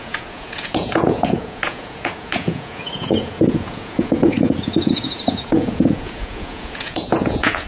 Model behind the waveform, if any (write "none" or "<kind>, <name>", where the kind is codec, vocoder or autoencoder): vocoder, Vocos